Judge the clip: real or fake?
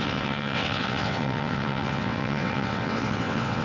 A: fake